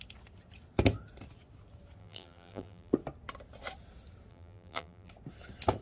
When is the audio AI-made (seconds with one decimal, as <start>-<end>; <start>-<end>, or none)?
2.0-2.9; 4.3-5.1